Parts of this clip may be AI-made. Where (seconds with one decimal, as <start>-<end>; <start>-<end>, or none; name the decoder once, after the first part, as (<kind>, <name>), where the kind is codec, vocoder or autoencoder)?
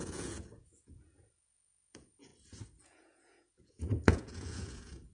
0.0-2.3 (vocoder, Vocos); 2.8-5.1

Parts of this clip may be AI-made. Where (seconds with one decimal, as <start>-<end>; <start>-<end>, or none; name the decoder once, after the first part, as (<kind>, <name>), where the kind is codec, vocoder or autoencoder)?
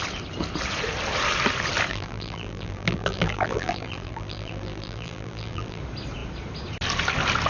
1.9-5.8 (vocoder, BigVGAN v2)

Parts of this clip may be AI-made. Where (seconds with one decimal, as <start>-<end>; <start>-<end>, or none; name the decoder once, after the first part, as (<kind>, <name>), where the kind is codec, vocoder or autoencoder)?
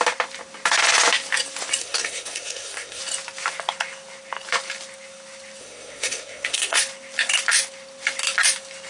1.8-3.0 (codec, SNAC); 5.6-6.8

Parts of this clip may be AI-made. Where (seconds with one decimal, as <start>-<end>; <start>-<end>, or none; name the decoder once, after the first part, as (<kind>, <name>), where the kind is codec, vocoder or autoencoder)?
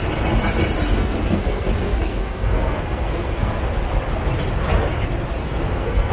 1.0-3.6 (codec, SNAC); 5.4-6.1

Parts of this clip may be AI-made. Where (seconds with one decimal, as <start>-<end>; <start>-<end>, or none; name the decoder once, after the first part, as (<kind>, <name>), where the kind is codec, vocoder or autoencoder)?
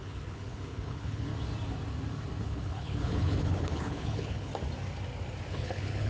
0.0-1.3 (codec, HILCodec); 2.4-4.5; 5.5-6.1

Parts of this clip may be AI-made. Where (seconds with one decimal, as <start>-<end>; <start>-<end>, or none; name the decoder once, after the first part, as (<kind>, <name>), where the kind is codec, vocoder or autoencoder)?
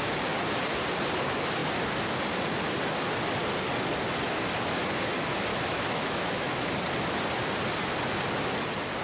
5.5-6.7 (autoencoder, DAC-VAE)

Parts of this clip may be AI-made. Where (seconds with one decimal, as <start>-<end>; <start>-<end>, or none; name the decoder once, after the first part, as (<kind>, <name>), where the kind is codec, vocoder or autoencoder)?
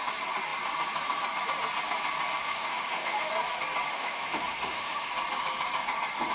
2.4-3.3 (autoencoder, DAC-VAE); 3.9-5.1